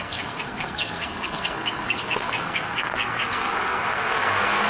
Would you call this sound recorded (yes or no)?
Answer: no